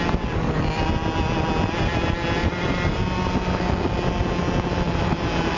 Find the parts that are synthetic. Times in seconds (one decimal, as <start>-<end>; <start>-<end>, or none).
none